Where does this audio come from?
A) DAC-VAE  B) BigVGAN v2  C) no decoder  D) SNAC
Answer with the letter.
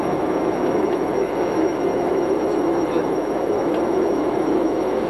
A